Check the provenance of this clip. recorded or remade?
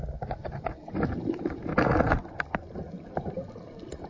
recorded